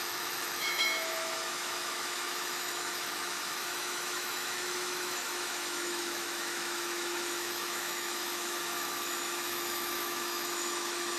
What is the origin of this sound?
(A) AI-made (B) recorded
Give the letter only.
A